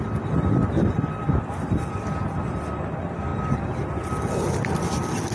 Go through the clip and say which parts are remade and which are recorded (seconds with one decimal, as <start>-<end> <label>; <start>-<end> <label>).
0.0-5.3 recorded

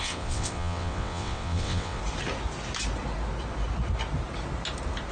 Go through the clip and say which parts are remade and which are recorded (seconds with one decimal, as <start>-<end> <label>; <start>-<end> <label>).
0.0-2.0 remade; 2.0-5.1 recorded

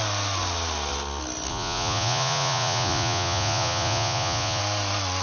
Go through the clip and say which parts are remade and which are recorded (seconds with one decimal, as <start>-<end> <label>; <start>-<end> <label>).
0.0-1.5 recorded; 1.5-4.6 remade; 4.6-5.2 recorded

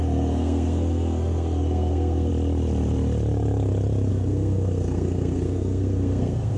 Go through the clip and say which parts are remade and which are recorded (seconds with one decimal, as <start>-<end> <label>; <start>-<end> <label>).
0.0-2.3 remade; 2.3-4.1 recorded; 4.1-6.6 remade

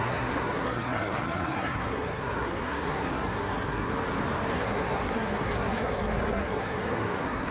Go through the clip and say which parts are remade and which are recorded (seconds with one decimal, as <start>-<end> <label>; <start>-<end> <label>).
0.0-3.9 remade; 3.9-4.5 recorded; 4.5-7.5 remade